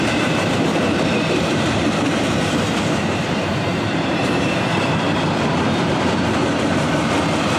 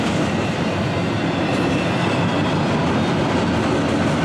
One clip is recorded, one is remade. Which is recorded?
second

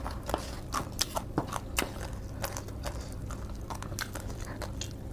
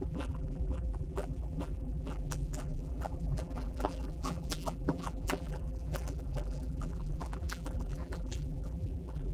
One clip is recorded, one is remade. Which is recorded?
first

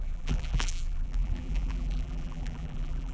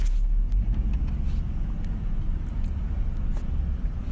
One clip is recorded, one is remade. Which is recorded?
second